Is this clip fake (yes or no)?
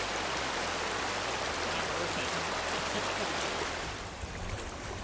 no